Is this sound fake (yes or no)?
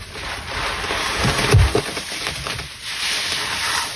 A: yes